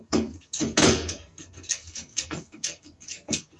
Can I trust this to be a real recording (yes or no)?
no